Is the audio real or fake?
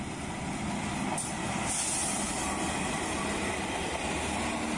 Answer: real